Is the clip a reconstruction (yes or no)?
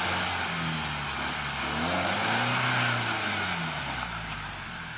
no